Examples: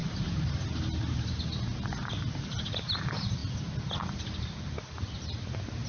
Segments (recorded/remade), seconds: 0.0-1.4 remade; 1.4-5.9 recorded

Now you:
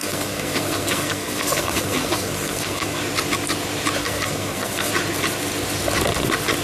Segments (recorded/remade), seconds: 0.0-3.0 remade; 3.0-4.0 recorded; 4.0-4.9 remade; 4.9-6.6 recorded

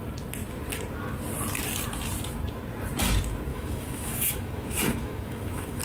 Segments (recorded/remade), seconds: 0.0-3.5 recorded; 3.5-5.8 remade

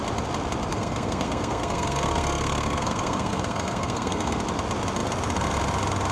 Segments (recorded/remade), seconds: 0.0-0.7 recorded; 0.7-4.4 remade; 4.4-6.1 recorded

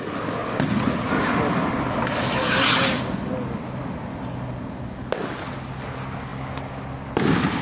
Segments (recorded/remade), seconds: 0.0-7.6 recorded

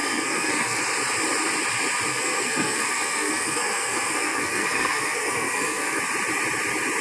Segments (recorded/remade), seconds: 0.0-0.8 remade; 0.8-2.1 recorded; 2.1-6.0 remade; 6.0-7.0 recorded

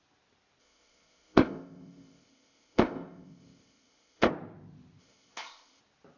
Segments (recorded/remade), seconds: 0.0-0.6 recorded; 0.6-4.3 remade; 4.3-5.0 recorded; 5.0-5.8 remade; 5.8-6.2 recorded

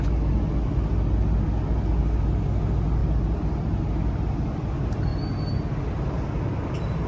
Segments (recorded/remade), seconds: 0.0-7.1 recorded